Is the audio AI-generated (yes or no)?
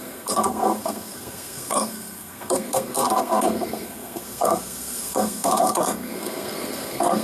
yes